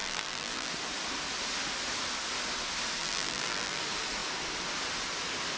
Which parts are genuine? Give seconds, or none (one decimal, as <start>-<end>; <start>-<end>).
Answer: 0.7-3.0; 3.8-5.6